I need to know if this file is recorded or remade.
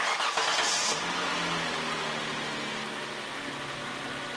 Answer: recorded